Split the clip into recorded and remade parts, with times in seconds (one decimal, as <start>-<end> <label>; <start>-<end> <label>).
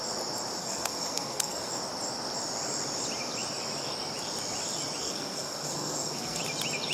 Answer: 0.0-0.6 recorded; 0.6-1.7 remade; 1.7-5.0 recorded; 5.0-6.4 remade; 6.4-6.9 recorded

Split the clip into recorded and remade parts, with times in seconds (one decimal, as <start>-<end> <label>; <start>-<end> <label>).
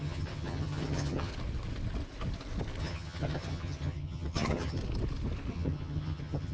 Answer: 0.0-1.3 remade; 1.3-2.8 recorded; 2.8-4.8 remade; 4.8-5.5 recorded; 5.5-6.5 remade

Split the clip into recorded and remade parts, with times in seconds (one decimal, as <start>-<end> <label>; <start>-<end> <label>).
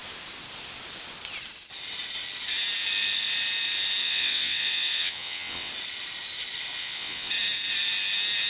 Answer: 0.0-4.0 recorded; 4.0-5.7 remade; 5.7-6.8 recorded; 6.8-7.3 remade; 7.3-8.5 recorded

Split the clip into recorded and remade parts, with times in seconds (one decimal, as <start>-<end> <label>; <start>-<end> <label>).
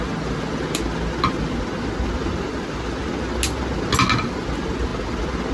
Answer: 0.0-5.5 recorded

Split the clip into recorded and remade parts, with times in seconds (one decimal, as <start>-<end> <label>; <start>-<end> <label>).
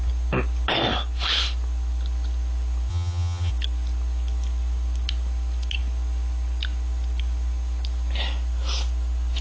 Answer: 0.0-2.9 recorded; 2.9-3.5 remade; 3.5-9.4 recorded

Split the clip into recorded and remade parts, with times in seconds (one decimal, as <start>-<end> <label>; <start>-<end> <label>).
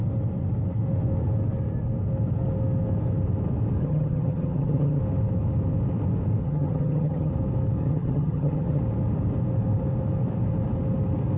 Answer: 0.0-3.8 recorded; 3.8-5.0 remade; 5.0-6.4 recorded; 6.4-7.3 remade; 7.3-7.8 recorded; 7.8-8.8 remade; 8.8-11.4 recorded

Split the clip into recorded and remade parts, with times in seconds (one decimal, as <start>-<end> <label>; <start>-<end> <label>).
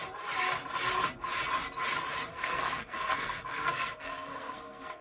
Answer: 0.0-2.3 recorded; 2.3-5.0 remade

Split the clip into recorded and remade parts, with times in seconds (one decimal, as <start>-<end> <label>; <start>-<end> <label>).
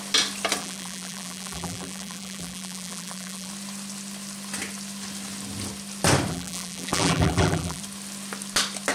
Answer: 0.0-0.6 recorded; 0.6-3.5 remade; 3.5-6.3 recorded; 6.3-7.8 remade; 7.8-8.9 recorded